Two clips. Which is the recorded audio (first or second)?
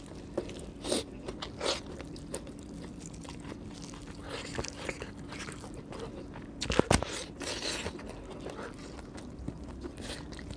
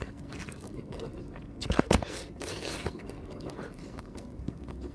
first